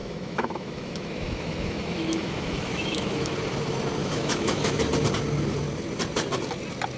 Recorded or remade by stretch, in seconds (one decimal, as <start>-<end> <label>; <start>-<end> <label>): 0.0-3.3 remade; 3.3-4.0 recorded; 4.0-4.8 remade; 4.8-7.0 recorded